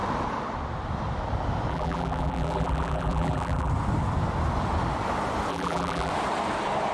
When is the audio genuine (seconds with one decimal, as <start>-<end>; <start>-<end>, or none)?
0.0-1.7; 3.7-5.5; 6.1-6.9